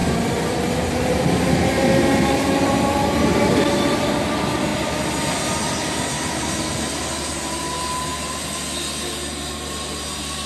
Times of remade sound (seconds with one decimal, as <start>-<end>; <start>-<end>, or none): 0.0-0.6